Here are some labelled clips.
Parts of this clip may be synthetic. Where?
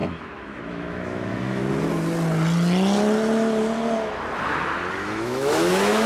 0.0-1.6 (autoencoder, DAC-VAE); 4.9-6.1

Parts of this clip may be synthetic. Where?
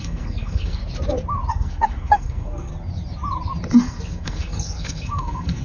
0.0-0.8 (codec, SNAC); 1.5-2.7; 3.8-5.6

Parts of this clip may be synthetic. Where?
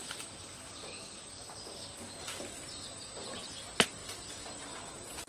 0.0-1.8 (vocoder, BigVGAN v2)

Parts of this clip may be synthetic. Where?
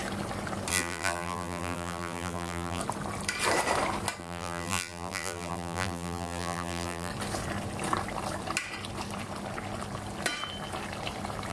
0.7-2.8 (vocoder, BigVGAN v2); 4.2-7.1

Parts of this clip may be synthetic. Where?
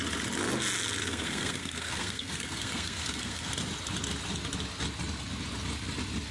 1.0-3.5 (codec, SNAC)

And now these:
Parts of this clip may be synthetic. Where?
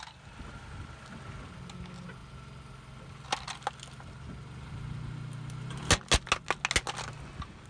none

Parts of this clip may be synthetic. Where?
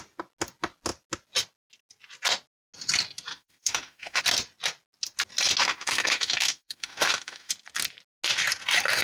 3.3-4.2 (autoencoder, DAC-VAE); 5.6-7.5